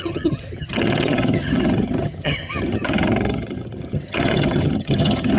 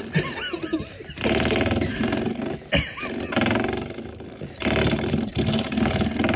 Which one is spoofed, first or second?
first